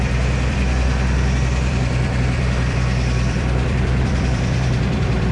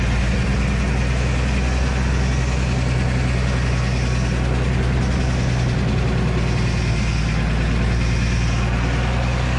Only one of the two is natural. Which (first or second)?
second